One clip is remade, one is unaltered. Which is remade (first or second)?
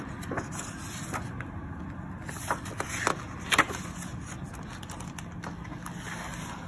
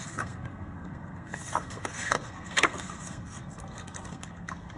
second